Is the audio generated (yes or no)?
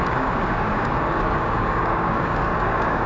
yes